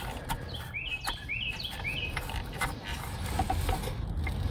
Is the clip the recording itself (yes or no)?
yes